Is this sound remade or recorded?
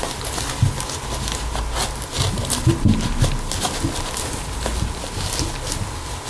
recorded